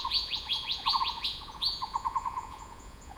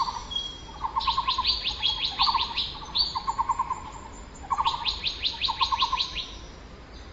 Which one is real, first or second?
second